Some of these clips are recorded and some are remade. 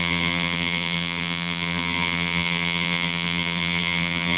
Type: remade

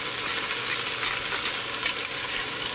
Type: recorded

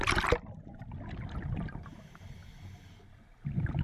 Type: recorded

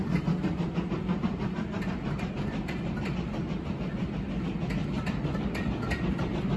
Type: remade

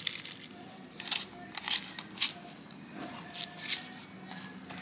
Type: recorded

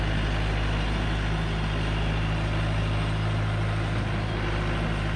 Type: recorded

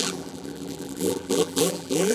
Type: remade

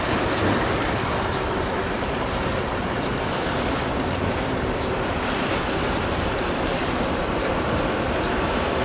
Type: remade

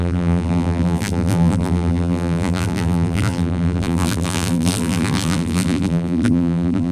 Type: remade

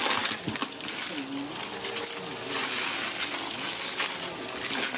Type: recorded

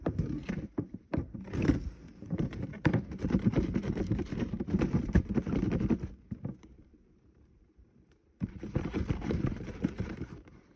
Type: remade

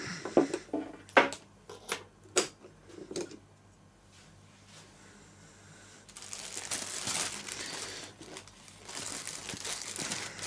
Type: recorded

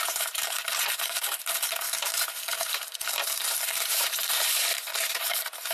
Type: remade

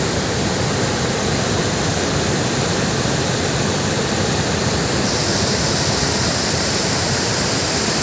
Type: remade